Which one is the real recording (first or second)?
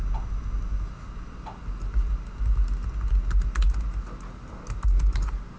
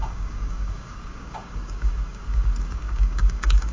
first